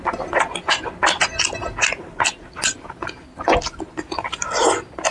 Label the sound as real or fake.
real